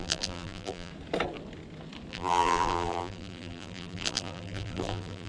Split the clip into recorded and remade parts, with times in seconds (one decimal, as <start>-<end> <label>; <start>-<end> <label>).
0.0-0.9 remade; 0.9-2.1 recorded; 2.1-5.3 remade